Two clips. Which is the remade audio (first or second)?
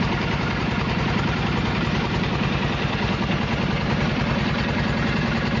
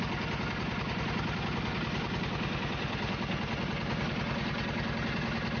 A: first